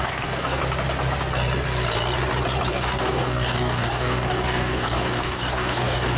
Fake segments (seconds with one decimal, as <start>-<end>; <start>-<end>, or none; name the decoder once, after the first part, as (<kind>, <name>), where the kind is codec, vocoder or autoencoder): 0.0-0.6 (codec, DAC); 2.7-6.2